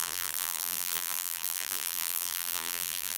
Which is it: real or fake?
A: fake